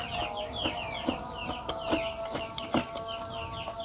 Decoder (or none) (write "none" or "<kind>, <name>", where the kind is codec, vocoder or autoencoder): none